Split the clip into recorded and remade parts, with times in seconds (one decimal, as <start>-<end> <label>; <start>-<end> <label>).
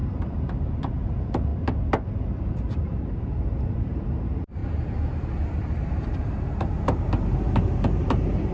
0.0-1.5 remade; 1.5-2.4 recorded; 2.4-4.6 remade; 4.6-5.2 recorded; 5.2-8.5 remade